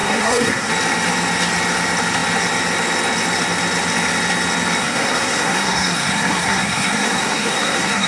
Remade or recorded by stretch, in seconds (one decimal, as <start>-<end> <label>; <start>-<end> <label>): 0.0-0.7 remade; 0.7-4.8 recorded; 4.8-8.1 remade